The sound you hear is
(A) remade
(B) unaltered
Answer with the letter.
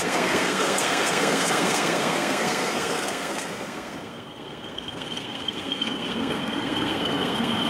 A